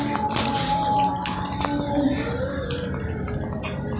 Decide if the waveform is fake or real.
real